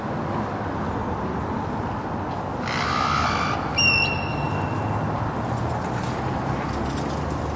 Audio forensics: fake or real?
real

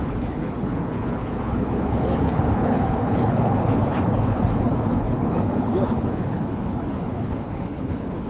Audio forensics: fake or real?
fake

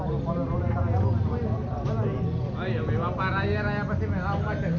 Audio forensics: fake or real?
real